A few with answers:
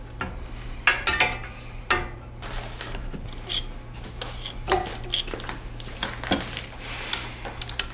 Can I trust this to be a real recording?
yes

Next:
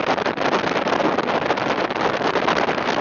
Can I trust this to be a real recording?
yes